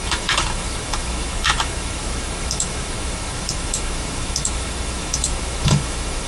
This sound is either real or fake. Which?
fake